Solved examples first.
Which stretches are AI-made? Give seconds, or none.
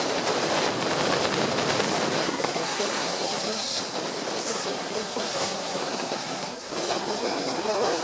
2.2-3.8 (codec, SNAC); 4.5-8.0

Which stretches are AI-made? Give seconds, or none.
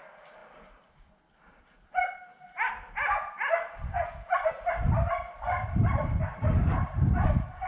5.6-7.7 (vocoder, BigVGAN v2)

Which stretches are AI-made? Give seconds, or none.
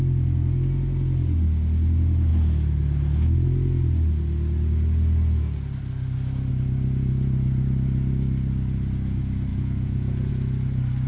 9.5-10.3 (vocoder, Vocos)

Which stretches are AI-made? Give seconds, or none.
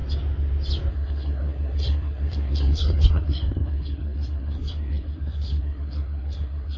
0.9-6.8 (codec, SNAC)